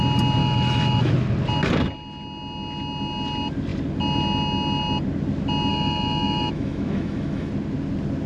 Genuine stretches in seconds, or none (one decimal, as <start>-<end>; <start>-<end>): 0.0-0.4; 1.1-5.7; 7.5-8.3